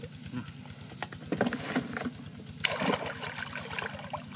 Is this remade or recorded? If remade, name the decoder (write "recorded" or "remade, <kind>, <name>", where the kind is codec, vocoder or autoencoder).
recorded